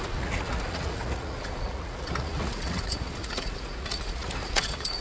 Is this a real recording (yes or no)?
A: no